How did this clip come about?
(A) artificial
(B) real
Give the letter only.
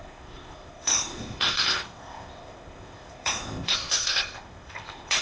A